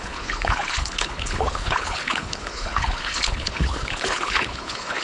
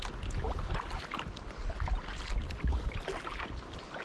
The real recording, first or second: second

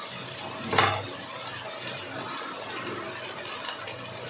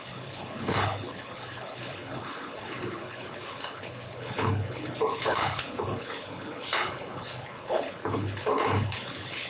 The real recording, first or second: first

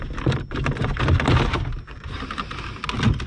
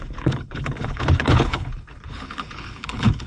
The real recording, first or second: first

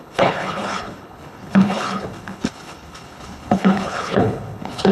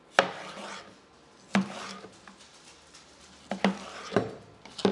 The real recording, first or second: second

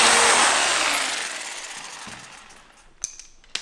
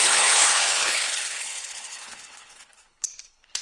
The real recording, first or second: first